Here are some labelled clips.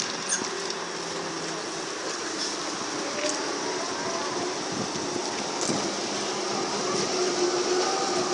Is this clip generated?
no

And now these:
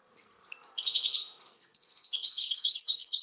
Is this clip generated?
yes